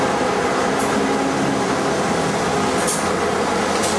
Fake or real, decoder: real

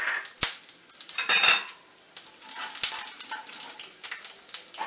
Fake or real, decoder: real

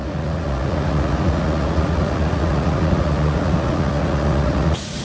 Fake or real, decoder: fake, vocoder, Vocos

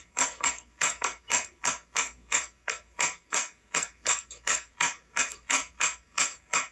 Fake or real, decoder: fake, codec, SNAC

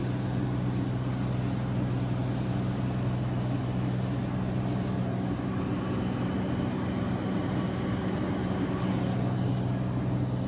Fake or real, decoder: real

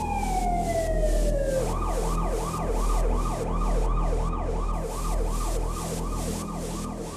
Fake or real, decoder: real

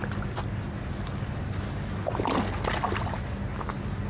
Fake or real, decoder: real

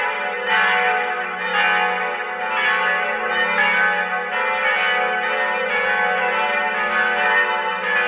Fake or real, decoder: real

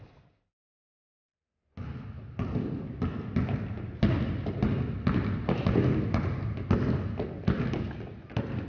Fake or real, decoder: real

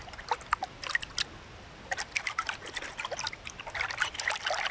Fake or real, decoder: real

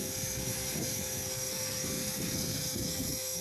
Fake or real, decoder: fake, codec, SNAC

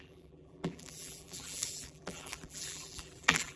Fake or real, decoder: fake, vocoder, BigVGAN v2